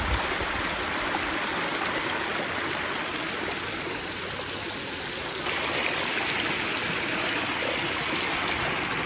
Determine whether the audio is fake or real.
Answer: real